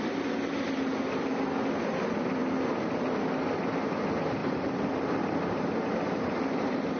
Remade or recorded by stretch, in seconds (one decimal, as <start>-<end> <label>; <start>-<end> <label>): 0.0-4.4 recorded; 4.4-7.0 remade